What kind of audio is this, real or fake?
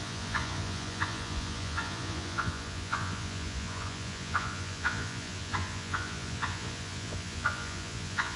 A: fake